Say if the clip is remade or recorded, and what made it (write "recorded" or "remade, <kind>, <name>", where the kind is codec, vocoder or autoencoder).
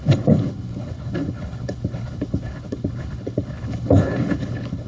remade, codec, HILCodec